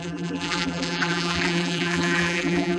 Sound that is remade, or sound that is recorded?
remade